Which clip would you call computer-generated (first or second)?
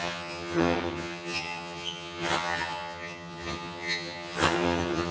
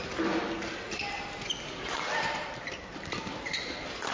first